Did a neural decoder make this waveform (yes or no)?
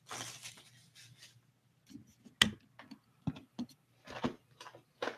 no